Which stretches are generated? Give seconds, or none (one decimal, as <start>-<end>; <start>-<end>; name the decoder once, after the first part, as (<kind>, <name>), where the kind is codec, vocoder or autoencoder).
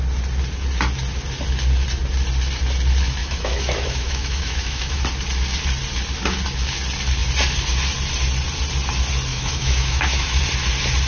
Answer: 3.2-5.0 (autoencoder, DAC-VAE); 9.3-10.4